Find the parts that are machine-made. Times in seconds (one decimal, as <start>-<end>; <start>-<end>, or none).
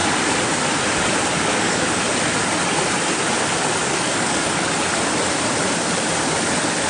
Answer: 1.3-2.0; 3.8-4.7